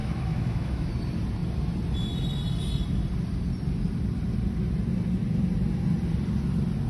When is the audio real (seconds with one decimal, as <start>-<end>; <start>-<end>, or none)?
0.9-6.9